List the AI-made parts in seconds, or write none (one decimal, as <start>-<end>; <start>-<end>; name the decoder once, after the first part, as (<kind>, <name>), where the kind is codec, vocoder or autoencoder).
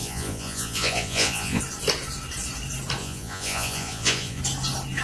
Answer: 0.0-1.6 (vocoder, Vocos); 3.0-4.4